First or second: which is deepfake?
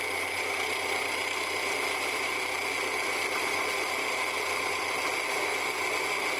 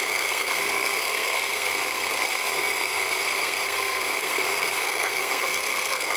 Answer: second